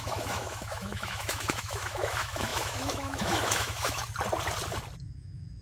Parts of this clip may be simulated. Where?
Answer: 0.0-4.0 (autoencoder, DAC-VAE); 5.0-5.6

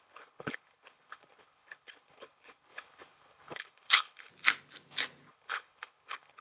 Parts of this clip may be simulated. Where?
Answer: 0.0-4.3 (codec, HILCodec); 5.3-6.4

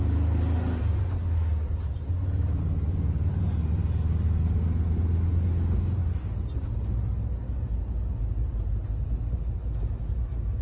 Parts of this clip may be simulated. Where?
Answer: none

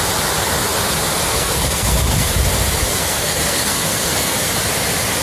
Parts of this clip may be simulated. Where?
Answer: 1.3-2.3 (codec, SNAC); 2.9-4.5